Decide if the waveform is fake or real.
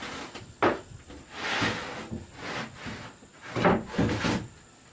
real